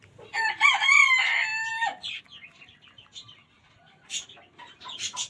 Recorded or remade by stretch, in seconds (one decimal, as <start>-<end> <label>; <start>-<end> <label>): 0.0-1.5 remade; 1.5-2.2 recorded; 2.2-5.3 remade